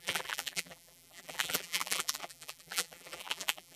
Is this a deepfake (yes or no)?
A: yes